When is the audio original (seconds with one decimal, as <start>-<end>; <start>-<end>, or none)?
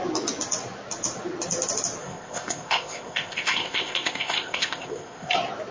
0.0-2.0; 5.3-5.7